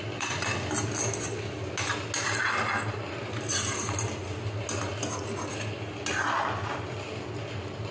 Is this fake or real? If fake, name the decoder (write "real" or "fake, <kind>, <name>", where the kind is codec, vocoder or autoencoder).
real